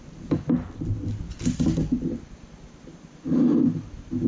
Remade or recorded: recorded